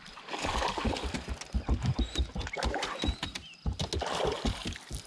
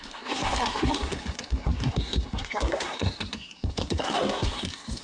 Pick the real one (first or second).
first